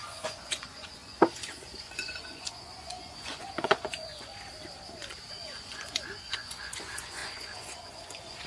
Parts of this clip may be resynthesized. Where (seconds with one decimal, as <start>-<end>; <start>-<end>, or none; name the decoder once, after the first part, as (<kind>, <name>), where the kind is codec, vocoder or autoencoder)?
0.0-4.3 (vocoder, Vocos); 5.3-8.5